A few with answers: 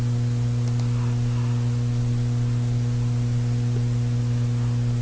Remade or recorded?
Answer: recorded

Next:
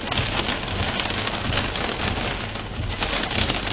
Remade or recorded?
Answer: recorded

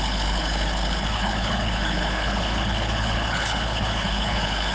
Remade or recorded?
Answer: remade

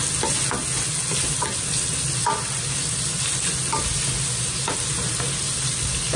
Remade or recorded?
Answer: recorded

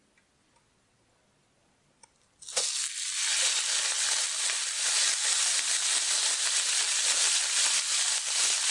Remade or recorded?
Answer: recorded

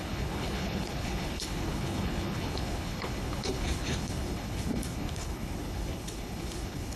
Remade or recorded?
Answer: remade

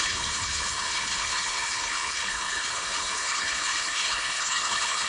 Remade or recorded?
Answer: remade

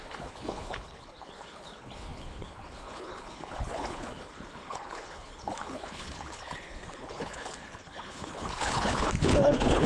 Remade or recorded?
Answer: remade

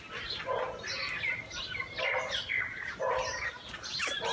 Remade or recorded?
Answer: recorded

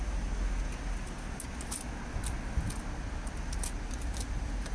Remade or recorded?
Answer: recorded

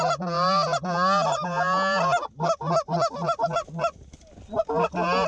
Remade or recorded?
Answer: recorded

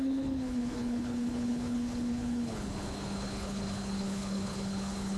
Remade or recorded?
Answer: remade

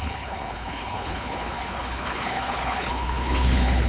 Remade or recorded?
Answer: remade